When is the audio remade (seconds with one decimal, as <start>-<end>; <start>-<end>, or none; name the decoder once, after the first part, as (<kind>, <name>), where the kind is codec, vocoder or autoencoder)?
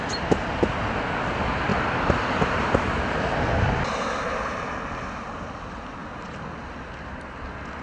1.7-3.4 (vocoder, BigVGAN v2)